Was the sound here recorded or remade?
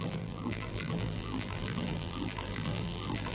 remade